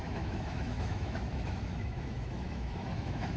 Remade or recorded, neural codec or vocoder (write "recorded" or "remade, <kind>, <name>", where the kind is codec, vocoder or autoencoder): remade, autoencoder, DAC-VAE